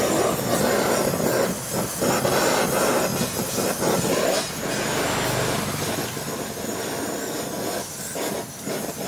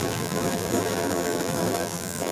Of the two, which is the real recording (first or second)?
first